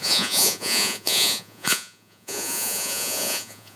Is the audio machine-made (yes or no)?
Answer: yes